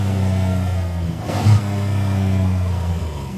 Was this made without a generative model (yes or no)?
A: no